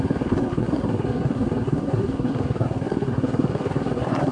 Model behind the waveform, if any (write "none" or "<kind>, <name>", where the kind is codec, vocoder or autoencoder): codec, SNAC